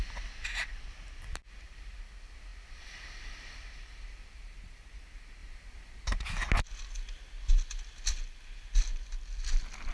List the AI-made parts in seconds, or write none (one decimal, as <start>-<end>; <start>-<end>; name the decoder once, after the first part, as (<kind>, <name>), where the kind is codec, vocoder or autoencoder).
none